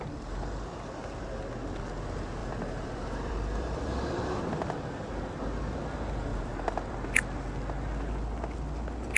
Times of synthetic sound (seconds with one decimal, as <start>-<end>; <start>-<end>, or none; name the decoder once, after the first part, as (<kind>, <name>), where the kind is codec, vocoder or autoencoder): 2.4-4.4 (vocoder, BigVGAN v2)

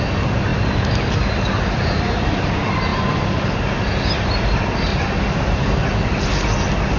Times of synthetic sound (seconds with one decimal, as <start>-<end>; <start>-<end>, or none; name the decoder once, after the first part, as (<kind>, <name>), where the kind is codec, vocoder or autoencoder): 0.5-2.5 (vocoder, BigVGAN v2); 2.9-3.6; 4.9-5.7

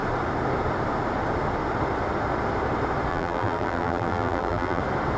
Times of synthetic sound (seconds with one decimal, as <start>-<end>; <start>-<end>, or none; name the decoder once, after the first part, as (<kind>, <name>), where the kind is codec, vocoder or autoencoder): 3.1-4.8 (vocoder, BigVGAN v2)

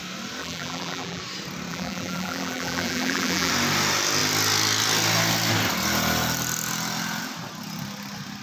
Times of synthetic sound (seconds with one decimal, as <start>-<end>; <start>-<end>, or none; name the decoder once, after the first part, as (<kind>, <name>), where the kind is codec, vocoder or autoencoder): 0.4-1.2 (vocoder, BigVGAN v2); 1.7-3.5